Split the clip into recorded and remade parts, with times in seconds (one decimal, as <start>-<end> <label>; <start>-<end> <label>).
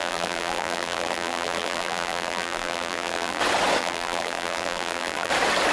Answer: 0.0-3.4 remade; 3.4-3.8 recorded; 3.8-5.3 remade; 5.3-5.7 recorded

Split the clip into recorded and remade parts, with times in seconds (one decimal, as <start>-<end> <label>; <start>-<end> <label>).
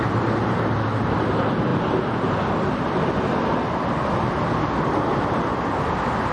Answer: 0.0-6.3 recorded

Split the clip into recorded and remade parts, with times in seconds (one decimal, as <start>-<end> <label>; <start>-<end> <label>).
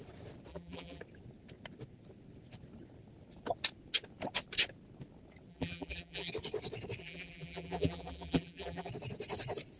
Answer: 0.0-0.5 recorded; 0.5-1.0 remade; 1.0-5.5 recorded; 5.5-6.3 remade; 6.3-7.0 recorded; 7.0-8.9 remade; 8.9-9.8 recorded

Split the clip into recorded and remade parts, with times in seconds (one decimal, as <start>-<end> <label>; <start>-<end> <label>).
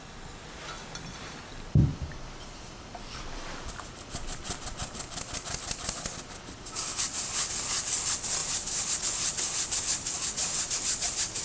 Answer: 0.0-1.5 recorded; 1.5-5.3 remade; 5.3-8.4 recorded; 8.4-11.4 remade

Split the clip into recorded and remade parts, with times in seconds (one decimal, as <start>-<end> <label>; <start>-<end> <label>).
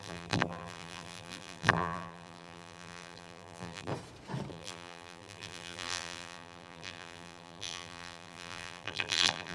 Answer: 0.0-3.9 remade; 3.9-4.5 recorded; 4.5-9.5 remade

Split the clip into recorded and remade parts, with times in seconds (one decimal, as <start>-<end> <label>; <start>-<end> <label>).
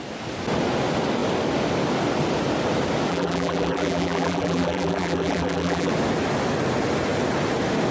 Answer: 0.0-3.1 recorded; 3.1-5.9 remade; 5.9-7.9 recorded